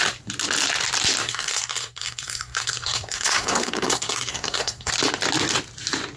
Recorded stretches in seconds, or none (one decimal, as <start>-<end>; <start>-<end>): 0.0-1.2; 4.9-6.2